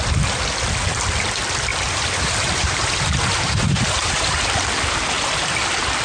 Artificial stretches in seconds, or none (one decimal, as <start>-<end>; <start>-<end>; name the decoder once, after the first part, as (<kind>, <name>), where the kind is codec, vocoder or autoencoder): 1.7-4.3 (vocoder, BigVGAN v2)